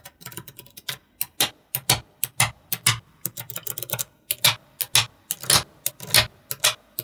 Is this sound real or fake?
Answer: real